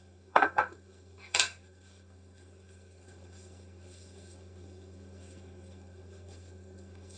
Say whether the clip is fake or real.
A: fake